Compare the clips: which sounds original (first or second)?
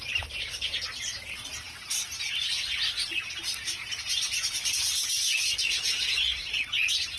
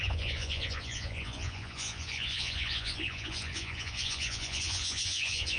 first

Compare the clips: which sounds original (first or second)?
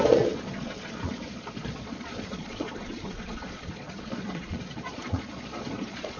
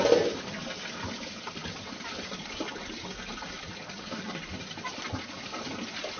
second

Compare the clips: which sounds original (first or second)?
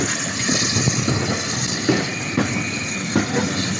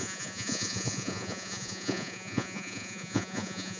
first